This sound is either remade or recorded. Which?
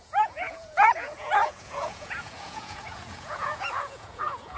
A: remade